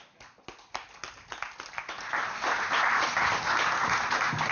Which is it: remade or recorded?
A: recorded